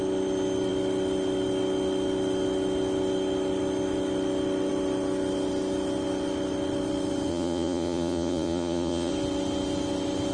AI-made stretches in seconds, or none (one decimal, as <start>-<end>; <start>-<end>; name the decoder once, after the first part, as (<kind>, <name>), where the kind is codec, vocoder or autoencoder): 7.3-9.1 (vocoder, Vocos)